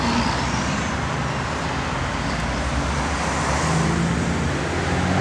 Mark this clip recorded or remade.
recorded